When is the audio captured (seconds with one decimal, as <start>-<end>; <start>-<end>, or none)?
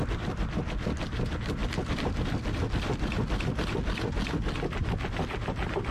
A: 0.0-5.9